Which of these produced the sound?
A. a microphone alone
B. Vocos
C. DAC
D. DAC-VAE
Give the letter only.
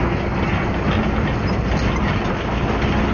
A